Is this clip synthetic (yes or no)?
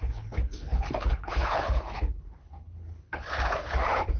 yes